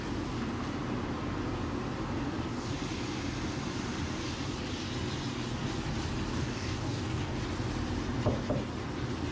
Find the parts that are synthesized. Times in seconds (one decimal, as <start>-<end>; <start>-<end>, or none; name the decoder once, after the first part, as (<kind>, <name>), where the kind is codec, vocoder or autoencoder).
6.3-7.4 (codec, DAC)